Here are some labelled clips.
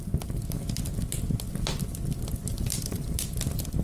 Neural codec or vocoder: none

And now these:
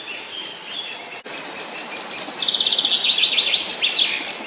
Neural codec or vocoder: none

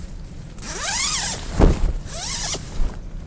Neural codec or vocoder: none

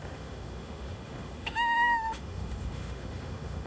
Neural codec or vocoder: autoencoder, DAC-VAE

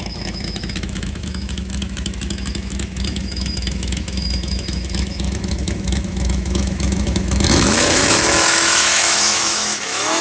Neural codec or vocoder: autoencoder, DAC-VAE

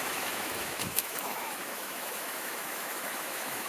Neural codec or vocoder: autoencoder, DAC-VAE